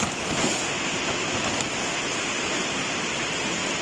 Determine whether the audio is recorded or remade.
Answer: recorded